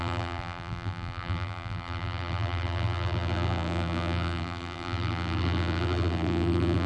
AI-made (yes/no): yes